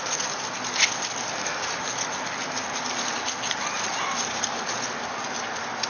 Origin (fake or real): real